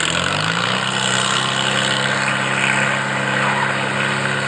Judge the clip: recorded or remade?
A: recorded